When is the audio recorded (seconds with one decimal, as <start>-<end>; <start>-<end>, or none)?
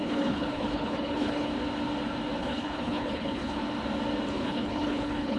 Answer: 1.5-2.4; 3.6-4.3